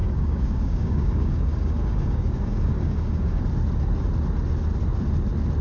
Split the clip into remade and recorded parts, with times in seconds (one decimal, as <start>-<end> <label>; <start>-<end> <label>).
0.0-3.4 remade; 3.4-5.6 recorded